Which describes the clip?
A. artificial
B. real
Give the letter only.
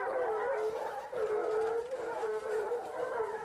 A